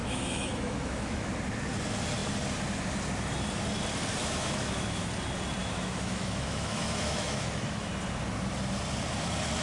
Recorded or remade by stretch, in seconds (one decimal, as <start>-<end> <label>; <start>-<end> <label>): 0.0-1.3 remade; 1.3-4.2 recorded; 4.2-5.1 remade; 5.1-5.6 recorded; 5.6-7.9 remade; 7.9-9.6 recorded